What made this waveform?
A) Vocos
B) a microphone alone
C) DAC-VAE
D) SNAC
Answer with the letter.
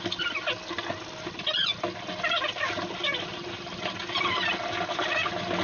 B